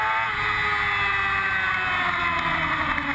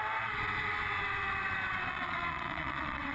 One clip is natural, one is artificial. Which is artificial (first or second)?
second